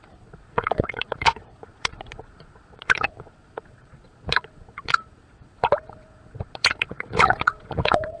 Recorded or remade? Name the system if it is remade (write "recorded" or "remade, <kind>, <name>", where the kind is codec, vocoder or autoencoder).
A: remade, vocoder, Vocos